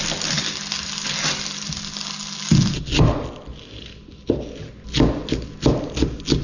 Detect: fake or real real